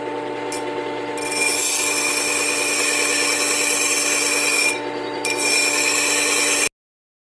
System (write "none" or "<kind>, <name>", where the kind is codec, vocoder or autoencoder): none